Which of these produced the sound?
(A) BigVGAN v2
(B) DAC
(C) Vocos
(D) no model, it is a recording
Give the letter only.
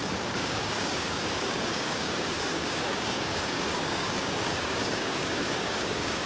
B